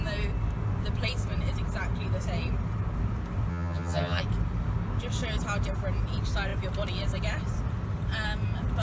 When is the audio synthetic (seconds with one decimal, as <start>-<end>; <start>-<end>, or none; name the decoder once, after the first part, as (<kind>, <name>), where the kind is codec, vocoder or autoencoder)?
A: 3.5-4.2 (vocoder, HiFi-GAN)